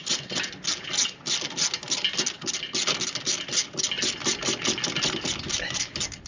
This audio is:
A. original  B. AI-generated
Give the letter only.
A